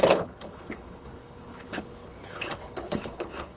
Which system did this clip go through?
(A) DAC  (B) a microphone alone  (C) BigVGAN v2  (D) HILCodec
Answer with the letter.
D